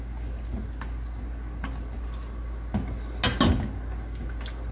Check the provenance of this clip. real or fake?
real